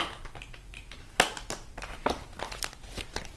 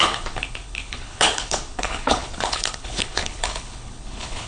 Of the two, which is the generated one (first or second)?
second